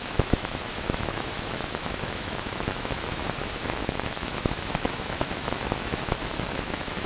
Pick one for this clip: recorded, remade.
remade